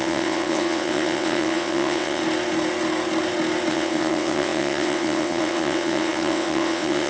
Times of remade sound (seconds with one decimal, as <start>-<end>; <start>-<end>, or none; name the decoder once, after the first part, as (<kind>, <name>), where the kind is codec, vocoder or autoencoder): 0.0-2.2 (vocoder, WaveNeXt); 3.7-7.1